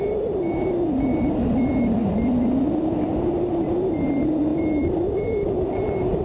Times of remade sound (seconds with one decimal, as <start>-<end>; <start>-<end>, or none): none